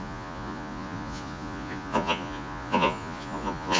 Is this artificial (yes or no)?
yes